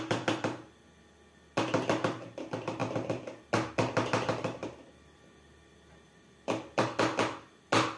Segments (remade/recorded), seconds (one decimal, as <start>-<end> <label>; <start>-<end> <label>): 0.0-4.6 recorded; 4.6-6.8 remade; 6.8-8.0 recorded